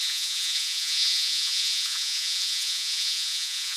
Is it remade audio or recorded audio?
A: remade